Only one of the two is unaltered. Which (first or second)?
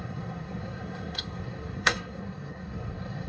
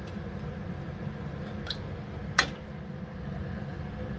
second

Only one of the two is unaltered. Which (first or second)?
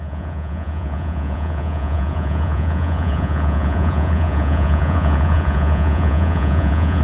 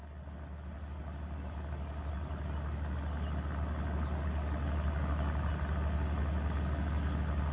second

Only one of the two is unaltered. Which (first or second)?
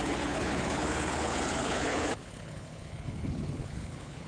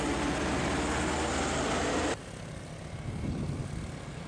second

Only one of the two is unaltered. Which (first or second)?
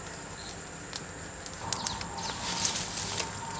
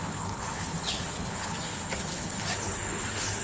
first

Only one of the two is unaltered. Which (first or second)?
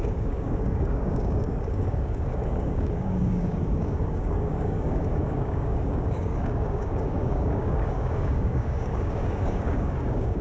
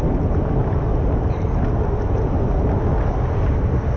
second